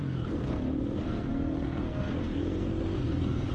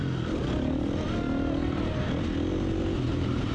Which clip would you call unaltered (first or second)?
second